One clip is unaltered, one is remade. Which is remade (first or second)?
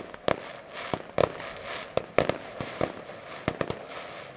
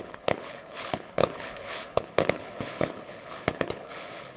second